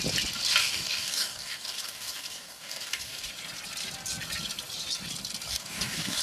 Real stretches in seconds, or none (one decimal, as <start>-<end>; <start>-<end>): 0.0-0.6; 3.3-5.5